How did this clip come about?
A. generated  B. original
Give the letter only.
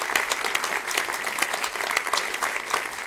B